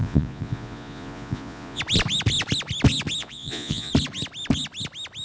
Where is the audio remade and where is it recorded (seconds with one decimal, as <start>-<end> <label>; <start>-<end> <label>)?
0.0-1.8 remade; 1.8-3.2 recorded; 3.2-3.9 remade; 3.9-5.2 recorded